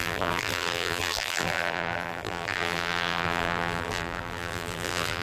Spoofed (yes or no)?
yes